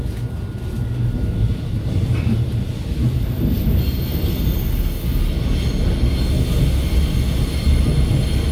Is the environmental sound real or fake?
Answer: real